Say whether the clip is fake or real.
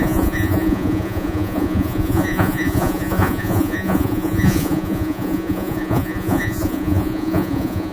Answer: fake